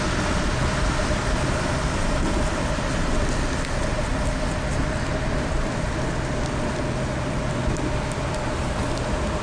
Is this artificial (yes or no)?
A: no